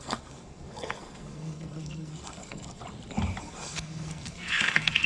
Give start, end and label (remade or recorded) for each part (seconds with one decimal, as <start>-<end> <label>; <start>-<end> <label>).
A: 0.0-2.8 remade; 2.8-3.4 recorded; 3.4-5.1 remade